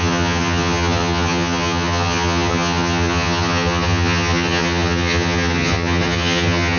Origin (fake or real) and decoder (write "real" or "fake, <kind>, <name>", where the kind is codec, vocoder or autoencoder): fake, vocoder, HiFi-GAN